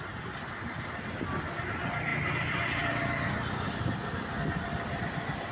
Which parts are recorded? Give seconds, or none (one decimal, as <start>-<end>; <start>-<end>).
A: 0.0-5.5